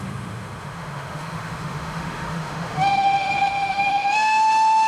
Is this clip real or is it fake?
fake